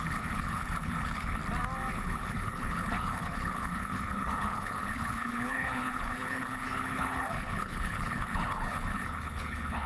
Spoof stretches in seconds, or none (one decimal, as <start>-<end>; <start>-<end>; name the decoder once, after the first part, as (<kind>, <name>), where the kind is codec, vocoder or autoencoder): 0.0-1.4 (codec, HILCodec); 1.9-9.9